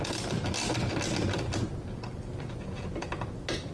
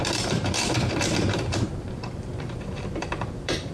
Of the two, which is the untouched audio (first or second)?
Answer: first